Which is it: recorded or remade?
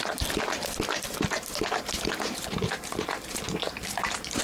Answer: recorded